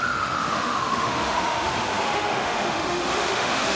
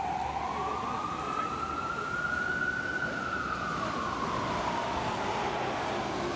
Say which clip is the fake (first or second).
first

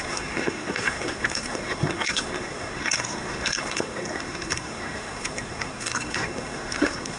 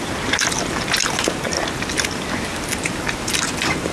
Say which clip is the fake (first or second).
first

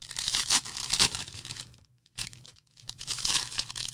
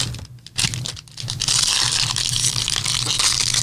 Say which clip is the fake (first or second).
first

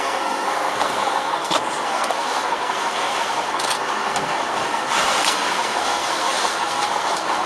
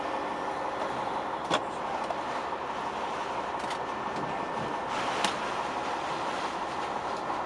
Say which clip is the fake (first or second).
first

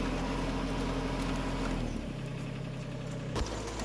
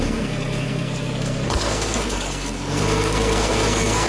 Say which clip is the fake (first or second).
second